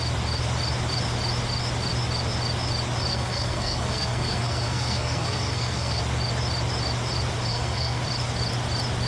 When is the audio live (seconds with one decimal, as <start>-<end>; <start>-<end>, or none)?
0.0-3.1; 6.0-7.5; 8.0-9.1